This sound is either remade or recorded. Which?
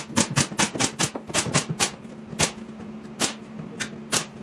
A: recorded